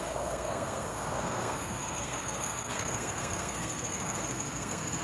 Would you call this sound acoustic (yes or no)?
no